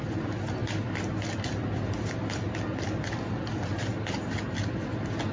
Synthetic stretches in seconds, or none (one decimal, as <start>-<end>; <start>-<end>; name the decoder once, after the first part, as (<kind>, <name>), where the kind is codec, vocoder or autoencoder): none